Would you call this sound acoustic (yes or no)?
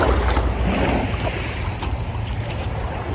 yes